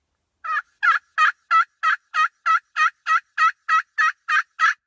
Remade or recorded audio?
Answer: recorded